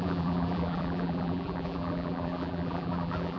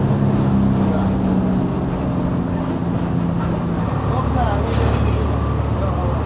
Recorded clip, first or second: second